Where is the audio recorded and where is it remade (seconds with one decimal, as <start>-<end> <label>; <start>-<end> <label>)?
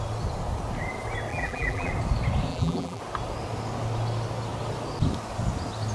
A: 0.0-1.3 recorded; 1.3-1.9 remade; 1.9-2.5 recorded; 2.5-3.0 remade; 3.0-5.9 recorded